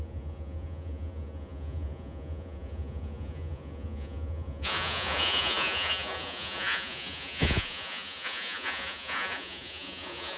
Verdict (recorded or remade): remade